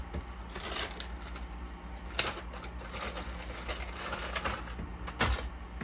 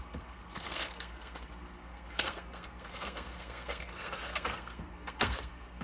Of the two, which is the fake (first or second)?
second